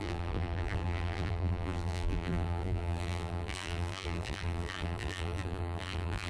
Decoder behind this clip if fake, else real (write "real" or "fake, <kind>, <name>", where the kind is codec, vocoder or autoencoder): fake, vocoder, BigVGAN v2